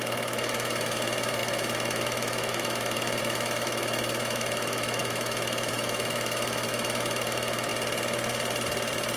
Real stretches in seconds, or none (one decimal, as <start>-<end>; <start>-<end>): 7.7-9.2